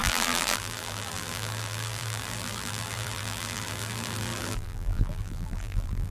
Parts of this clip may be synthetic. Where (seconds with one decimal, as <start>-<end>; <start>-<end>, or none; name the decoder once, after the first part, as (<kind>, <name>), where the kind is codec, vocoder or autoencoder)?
0.0-6.1 (vocoder, BigVGAN v2)